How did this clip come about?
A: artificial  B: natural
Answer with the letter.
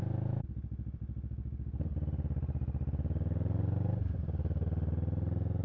B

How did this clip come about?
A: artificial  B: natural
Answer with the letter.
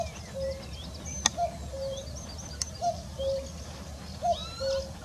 B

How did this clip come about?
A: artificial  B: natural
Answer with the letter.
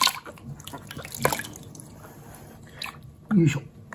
B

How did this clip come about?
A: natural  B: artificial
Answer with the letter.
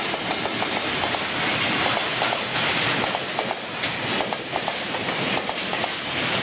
A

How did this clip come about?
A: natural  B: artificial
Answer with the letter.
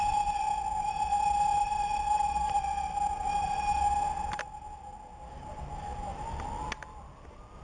A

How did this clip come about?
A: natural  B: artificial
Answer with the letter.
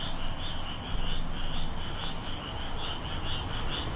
A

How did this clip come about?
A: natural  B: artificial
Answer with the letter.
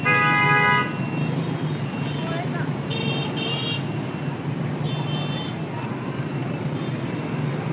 A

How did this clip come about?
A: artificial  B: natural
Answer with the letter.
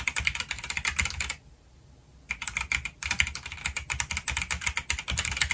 B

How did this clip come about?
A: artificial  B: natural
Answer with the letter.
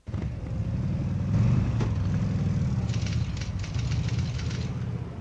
B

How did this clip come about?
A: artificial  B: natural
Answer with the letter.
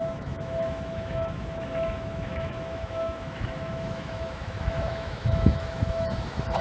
A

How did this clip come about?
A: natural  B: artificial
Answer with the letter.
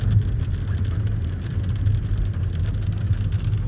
A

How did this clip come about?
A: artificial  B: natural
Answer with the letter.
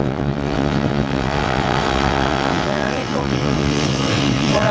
A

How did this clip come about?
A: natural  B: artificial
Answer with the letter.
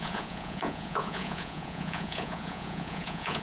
B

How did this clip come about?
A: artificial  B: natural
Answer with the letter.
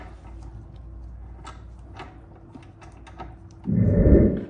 B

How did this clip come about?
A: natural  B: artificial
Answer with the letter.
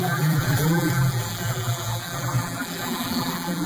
B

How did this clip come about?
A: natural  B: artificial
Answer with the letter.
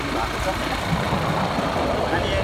A